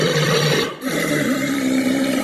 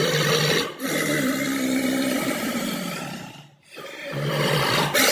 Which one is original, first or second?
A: second